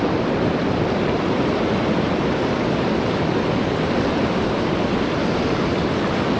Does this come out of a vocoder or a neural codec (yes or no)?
no